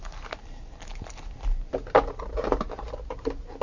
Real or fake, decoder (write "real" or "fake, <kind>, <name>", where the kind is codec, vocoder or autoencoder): real